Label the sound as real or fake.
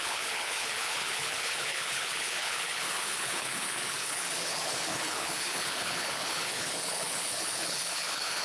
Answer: fake